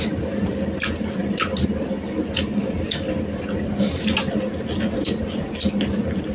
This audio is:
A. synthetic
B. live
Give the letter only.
B